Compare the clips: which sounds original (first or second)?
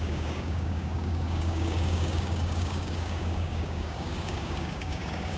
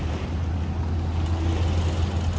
second